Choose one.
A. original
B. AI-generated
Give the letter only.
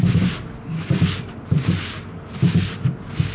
A